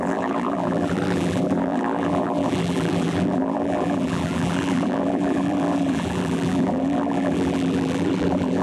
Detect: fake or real fake